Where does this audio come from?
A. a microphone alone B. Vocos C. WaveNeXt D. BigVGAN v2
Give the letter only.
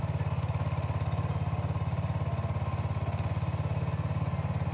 A